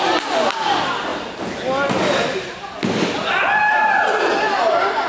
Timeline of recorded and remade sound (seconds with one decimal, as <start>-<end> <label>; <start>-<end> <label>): 0.0-5.1 recorded